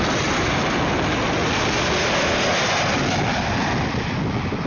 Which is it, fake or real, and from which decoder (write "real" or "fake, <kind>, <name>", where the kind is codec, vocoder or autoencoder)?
real